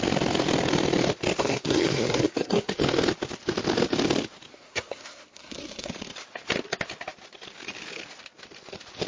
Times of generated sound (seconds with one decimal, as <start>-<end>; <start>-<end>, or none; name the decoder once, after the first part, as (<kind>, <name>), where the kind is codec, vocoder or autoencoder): 1.4-2.8 (codec, SNAC); 4.5-5.9